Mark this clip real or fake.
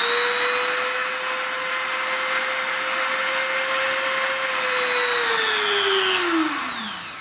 real